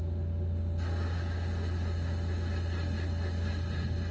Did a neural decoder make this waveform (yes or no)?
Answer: no